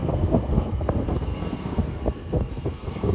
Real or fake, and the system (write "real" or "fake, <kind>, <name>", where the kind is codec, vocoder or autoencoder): fake, codec, SNAC